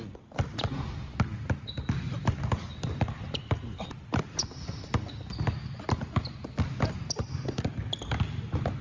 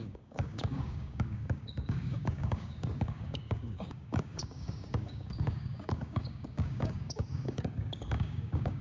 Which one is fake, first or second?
second